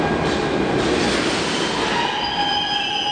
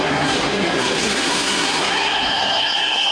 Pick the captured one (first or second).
first